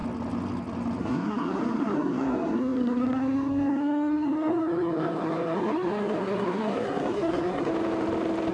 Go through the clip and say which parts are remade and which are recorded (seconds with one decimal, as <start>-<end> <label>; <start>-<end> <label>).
0.0-1.0 recorded; 1.0-7.7 remade; 7.7-8.5 recorded